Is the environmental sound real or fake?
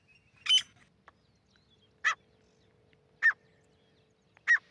real